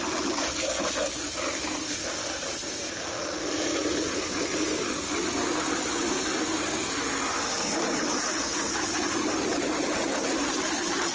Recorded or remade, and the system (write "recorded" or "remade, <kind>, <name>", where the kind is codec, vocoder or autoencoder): recorded